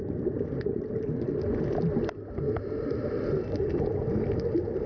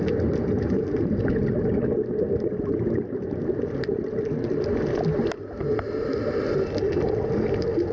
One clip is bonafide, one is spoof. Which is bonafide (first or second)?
second